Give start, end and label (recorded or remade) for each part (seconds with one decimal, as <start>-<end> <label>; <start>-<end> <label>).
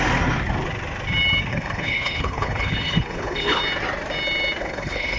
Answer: 0.0-1.5 recorded; 1.5-3.6 remade; 3.6-4.6 recorded; 4.6-5.2 remade